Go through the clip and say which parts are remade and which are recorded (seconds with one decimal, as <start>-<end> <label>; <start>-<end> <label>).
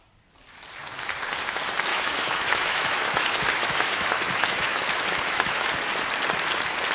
0.0-1.9 recorded; 1.9-5.7 remade; 5.7-6.9 recorded